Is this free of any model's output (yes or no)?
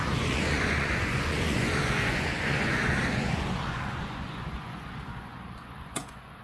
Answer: no